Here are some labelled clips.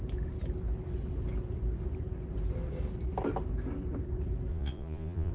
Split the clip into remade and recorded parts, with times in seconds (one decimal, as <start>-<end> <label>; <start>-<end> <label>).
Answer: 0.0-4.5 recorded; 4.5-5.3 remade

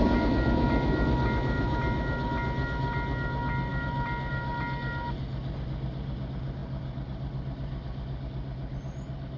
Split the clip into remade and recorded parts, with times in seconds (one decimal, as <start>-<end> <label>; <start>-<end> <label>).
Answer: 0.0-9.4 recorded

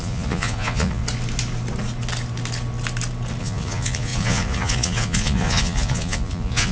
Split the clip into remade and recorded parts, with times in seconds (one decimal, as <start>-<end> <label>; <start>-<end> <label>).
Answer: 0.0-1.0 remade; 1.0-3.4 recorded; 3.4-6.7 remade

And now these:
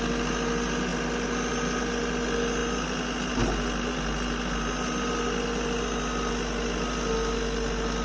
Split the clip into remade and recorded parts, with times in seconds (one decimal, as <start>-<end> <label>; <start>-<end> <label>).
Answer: 0.0-8.0 recorded